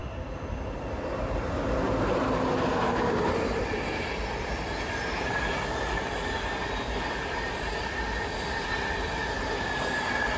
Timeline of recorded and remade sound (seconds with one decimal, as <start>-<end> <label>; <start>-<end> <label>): 0.0-10.4 recorded